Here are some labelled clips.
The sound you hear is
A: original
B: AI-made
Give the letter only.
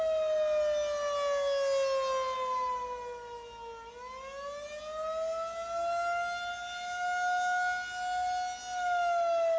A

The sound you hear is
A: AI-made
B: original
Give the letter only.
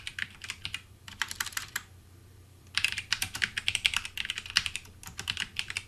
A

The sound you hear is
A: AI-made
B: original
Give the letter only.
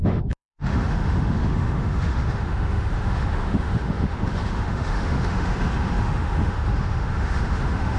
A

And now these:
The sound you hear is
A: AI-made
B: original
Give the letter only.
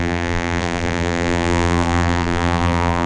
A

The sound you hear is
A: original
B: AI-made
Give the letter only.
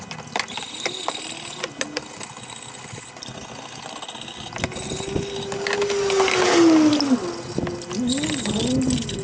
A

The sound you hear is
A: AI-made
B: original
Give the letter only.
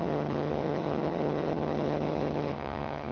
A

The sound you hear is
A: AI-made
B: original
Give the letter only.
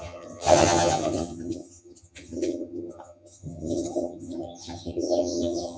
A